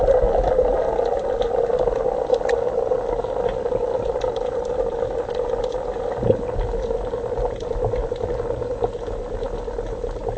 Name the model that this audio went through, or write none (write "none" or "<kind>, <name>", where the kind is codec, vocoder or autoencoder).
none